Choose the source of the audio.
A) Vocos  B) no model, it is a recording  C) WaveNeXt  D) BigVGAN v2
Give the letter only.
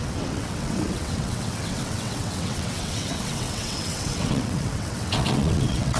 C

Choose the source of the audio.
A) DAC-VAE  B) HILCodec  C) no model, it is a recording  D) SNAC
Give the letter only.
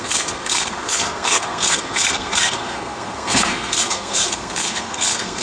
D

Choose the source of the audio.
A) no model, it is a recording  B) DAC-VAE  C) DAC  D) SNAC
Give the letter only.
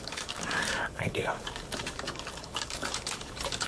C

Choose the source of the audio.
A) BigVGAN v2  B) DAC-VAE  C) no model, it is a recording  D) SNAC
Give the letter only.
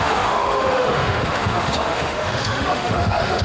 B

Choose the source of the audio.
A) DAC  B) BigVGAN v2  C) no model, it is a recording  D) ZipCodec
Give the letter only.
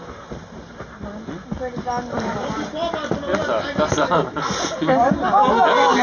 C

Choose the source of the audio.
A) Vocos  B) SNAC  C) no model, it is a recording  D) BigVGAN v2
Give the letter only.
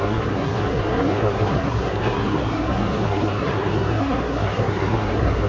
B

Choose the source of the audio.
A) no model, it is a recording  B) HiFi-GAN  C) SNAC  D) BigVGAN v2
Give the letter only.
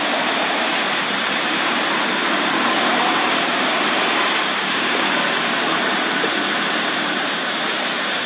D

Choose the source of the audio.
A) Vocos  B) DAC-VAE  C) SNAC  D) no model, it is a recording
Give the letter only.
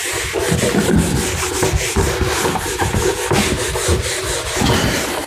D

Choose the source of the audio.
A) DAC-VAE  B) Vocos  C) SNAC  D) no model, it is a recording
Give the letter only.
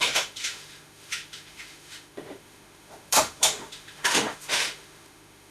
A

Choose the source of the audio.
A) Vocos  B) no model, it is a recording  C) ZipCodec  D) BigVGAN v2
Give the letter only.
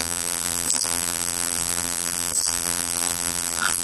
D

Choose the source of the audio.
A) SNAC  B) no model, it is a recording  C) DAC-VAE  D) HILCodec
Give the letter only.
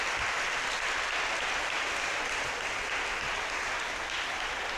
B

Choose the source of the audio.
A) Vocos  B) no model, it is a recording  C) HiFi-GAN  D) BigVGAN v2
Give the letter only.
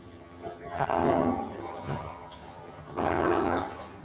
C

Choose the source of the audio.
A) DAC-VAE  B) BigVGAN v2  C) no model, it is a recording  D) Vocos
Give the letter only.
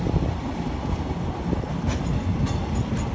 C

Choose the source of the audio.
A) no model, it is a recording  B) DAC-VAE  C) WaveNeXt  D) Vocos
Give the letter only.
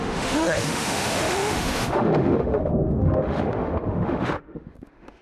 B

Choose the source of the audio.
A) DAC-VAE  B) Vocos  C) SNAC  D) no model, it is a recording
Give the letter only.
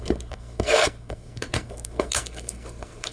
C